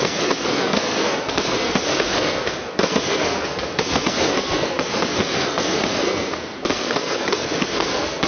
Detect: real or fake fake